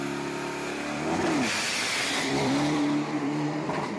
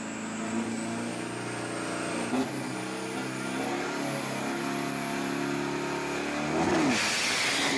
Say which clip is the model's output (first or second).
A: first